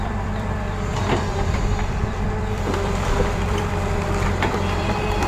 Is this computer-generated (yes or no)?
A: yes